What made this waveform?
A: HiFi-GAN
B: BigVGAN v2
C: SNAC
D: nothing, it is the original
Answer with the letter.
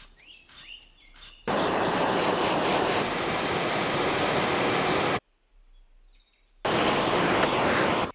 D